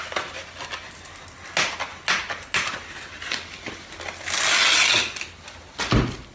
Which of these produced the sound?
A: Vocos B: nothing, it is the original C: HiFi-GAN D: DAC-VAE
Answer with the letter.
B